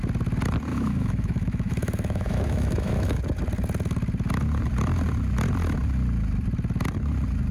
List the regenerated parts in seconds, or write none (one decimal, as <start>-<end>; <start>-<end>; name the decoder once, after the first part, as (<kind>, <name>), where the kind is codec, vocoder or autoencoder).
0.7-3.2 (autoencoder, DAC-VAE)